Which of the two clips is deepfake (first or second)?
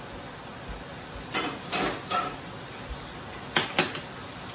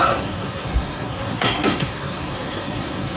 second